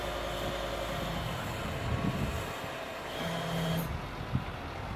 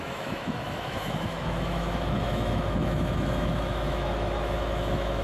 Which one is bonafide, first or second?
first